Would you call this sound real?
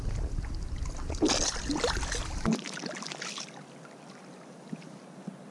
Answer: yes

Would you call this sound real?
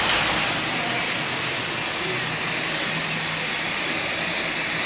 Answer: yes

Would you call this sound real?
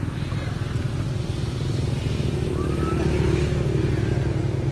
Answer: yes